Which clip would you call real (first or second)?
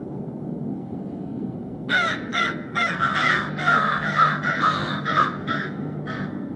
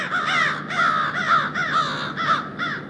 second